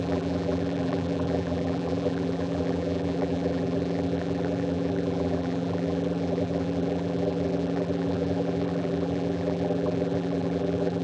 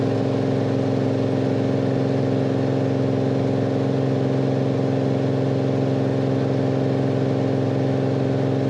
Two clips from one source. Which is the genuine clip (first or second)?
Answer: second